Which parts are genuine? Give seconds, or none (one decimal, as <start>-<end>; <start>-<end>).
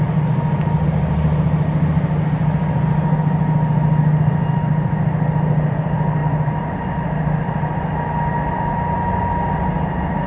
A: none